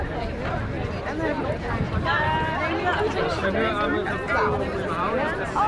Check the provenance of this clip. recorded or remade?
recorded